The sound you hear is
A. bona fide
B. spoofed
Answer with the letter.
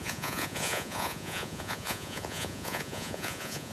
B